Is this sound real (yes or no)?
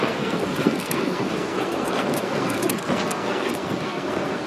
no